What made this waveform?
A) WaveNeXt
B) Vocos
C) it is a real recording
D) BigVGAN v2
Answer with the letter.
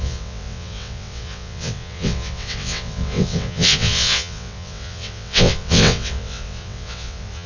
A